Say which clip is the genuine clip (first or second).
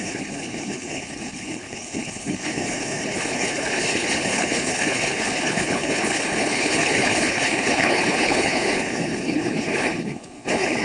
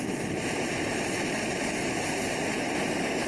second